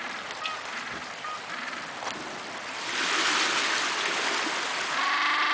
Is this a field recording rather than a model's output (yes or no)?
yes